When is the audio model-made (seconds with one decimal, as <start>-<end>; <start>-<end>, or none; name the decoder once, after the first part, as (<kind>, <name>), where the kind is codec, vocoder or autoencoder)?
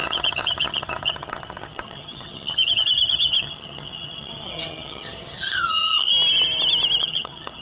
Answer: 0.0-6.1 (vocoder, HiFi-GAN); 7.0-7.6